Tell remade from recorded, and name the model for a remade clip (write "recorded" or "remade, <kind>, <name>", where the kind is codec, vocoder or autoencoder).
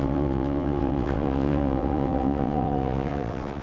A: remade, vocoder, WaveNeXt